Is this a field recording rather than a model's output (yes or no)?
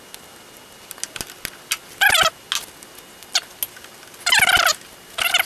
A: yes